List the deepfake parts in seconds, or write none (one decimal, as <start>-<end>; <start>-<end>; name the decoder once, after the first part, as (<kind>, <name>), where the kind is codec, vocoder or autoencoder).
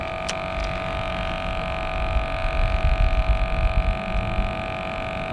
none